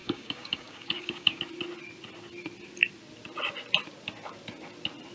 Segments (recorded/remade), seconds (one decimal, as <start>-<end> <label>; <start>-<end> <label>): 0.0-1.4 remade; 1.4-5.1 recorded